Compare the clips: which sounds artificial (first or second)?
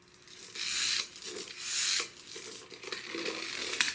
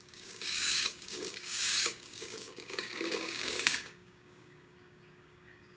second